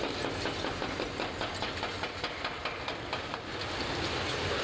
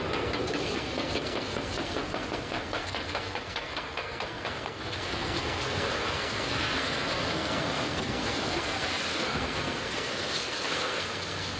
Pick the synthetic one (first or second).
second